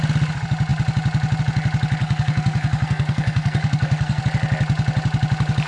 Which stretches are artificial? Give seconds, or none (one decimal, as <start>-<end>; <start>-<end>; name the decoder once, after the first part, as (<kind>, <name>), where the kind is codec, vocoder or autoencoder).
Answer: 2.0-4.2 (codec, SNAC)